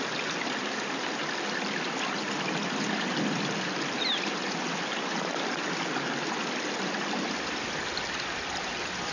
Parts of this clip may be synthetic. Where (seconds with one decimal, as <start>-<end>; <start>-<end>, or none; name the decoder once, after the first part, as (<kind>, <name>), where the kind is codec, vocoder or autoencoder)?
none